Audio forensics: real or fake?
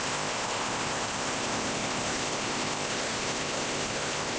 fake